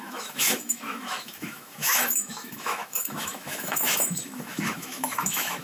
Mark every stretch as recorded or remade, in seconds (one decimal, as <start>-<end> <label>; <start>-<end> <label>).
0.0-5.6 remade